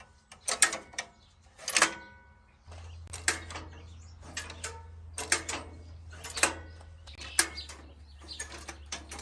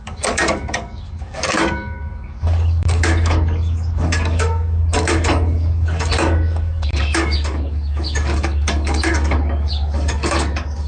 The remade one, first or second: second